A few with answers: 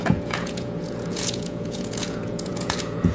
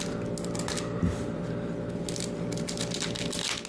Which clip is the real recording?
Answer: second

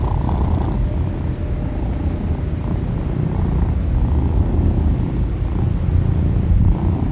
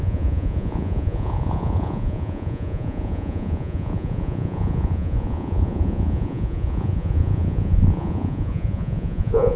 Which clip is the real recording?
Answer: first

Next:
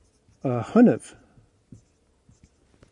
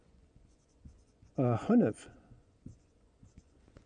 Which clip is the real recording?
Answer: first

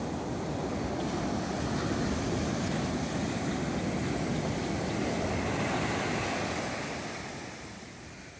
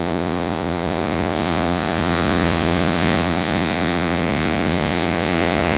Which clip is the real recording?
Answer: first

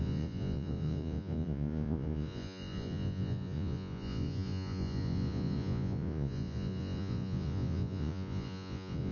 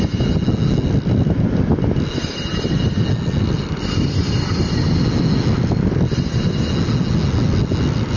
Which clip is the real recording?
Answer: second